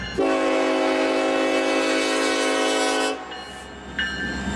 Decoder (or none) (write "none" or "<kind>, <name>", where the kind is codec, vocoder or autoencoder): none